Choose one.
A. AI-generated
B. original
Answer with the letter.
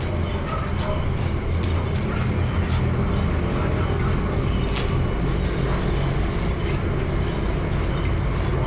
B